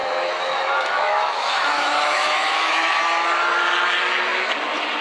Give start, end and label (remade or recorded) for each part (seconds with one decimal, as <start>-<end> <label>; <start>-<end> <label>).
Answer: 0.0-3.0 remade; 3.0-5.0 recorded

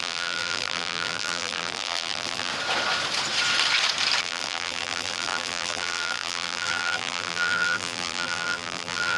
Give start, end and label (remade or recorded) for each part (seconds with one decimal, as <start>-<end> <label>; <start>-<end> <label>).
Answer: 0.0-2.5 remade; 2.5-4.2 recorded; 4.2-9.2 remade

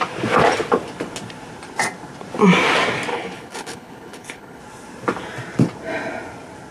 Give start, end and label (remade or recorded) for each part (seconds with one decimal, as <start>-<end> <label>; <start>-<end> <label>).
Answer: 0.0-3.1 recorded; 3.1-4.6 remade; 4.6-6.7 recorded

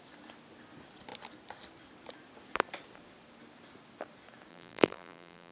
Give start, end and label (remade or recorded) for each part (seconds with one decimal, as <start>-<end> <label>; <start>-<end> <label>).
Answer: 0.0-4.5 recorded; 4.5-5.5 remade

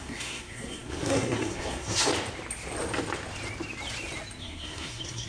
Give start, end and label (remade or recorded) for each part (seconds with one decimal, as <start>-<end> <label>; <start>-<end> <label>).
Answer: 0.0-2.1 remade; 2.1-4.4 recorded; 4.4-5.3 remade